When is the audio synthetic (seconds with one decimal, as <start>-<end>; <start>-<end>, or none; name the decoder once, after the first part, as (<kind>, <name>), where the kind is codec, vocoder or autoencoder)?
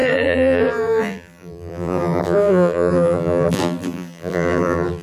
0.0-5.0 (vocoder, BigVGAN v2)